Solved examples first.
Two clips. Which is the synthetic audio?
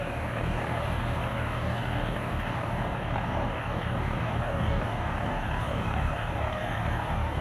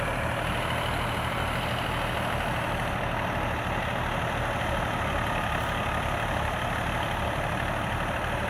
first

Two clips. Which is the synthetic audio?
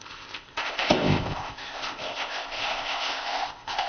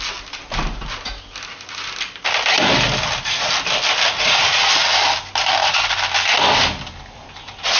first